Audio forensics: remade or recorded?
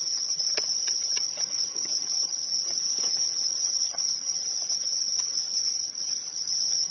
remade